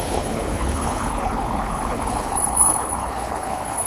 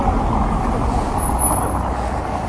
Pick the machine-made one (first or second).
first